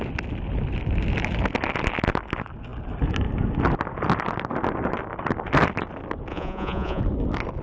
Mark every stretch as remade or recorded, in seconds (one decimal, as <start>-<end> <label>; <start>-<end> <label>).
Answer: 0.0-6.3 recorded; 6.3-7.0 remade; 7.0-7.6 recorded